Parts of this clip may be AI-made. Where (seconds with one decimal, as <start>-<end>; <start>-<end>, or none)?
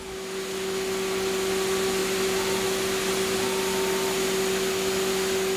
none